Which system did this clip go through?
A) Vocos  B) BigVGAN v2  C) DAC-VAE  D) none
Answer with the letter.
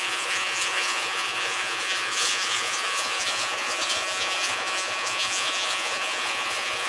A